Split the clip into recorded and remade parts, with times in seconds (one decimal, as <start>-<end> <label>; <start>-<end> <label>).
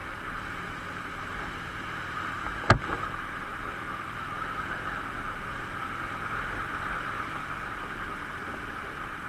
0.0-1.7 remade; 1.7-9.3 recorded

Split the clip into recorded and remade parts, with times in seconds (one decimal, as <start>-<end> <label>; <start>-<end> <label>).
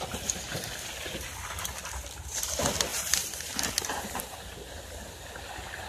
0.0-2.9 recorded; 2.9-4.2 remade; 4.2-5.9 recorded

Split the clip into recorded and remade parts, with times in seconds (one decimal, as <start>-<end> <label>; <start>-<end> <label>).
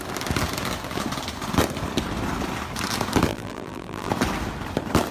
0.0-3.3 recorded; 3.3-4.1 remade; 4.1-5.1 recorded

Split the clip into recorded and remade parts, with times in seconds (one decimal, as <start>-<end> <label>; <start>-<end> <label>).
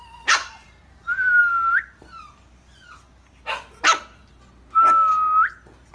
0.0-0.4 recorded; 0.4-1.4 remade; 1.4-5.9 recorded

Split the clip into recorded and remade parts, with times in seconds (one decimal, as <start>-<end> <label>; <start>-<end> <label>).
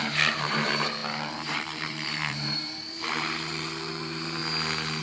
0.0-4.4 remade; 4.4-5.0 recorded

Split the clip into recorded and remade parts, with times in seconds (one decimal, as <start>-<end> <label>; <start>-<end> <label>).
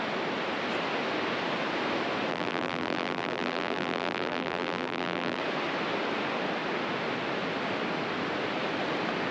0.0-2.3 recorded; 2.3-5.4 remade; 5.4-9.3 recorded